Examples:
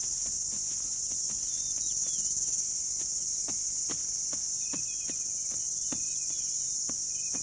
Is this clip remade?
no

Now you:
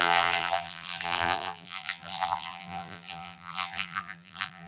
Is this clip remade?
yes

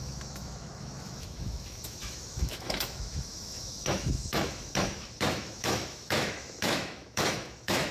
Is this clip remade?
yes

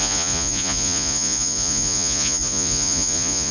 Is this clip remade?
yes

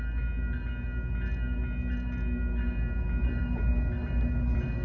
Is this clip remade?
no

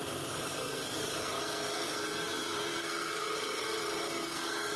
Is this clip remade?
yes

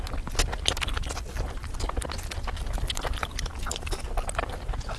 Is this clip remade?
no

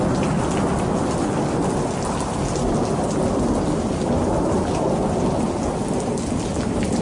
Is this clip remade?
no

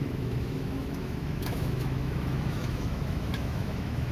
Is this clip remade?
yes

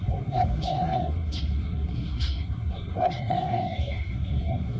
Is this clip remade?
yes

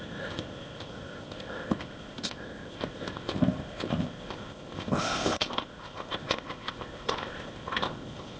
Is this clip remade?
yes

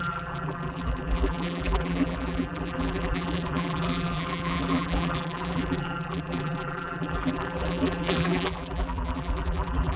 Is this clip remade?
yes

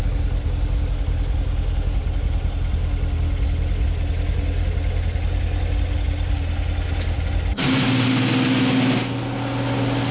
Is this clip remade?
no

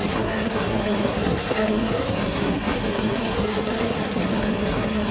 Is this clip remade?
yes